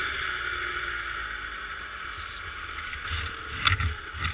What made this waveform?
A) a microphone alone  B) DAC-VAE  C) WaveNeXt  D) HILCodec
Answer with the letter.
A